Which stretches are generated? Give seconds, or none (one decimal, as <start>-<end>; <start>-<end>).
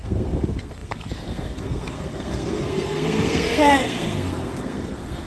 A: 0.0-5.3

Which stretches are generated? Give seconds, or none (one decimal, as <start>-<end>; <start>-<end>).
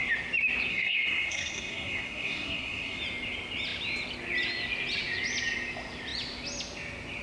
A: 0.7-3.0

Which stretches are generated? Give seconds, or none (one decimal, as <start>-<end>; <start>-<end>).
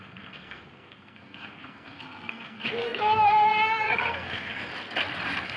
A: 0.0-4.7